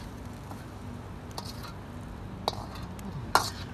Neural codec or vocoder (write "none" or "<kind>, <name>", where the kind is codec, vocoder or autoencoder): none